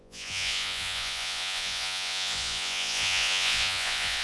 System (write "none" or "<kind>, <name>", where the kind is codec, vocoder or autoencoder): vocoder, Vocos